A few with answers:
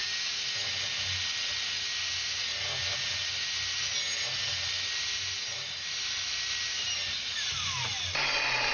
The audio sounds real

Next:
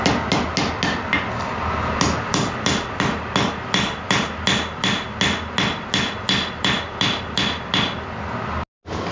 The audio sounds real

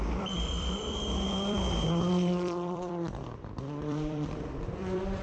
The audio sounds fake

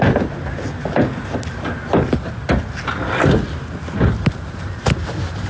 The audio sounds real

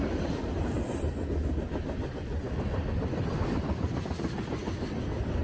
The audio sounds real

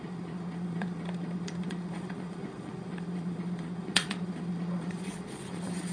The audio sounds fake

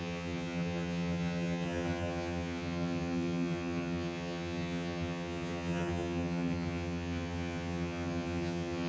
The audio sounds fake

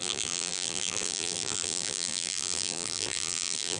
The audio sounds fake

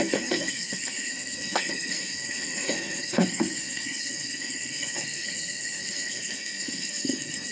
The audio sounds fake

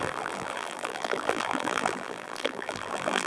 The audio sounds fake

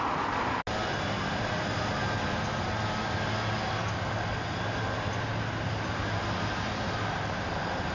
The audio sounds real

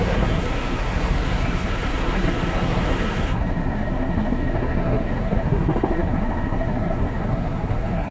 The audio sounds fake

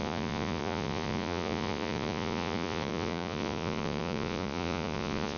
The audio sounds fake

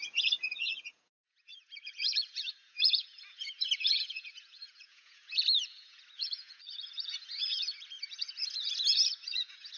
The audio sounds fake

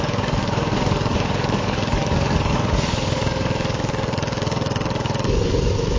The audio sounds fake